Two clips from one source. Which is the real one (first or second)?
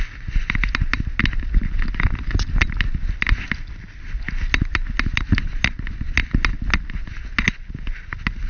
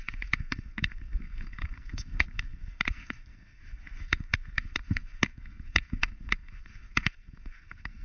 first